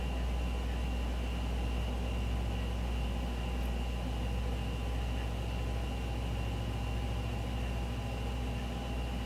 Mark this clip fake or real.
real